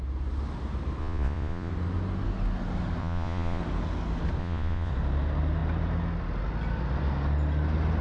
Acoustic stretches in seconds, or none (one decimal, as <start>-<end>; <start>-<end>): 0.0-1.0; 1.7-3.0; 3.6-4.4; 4.9-8.0